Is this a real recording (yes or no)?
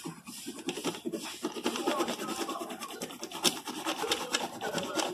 yes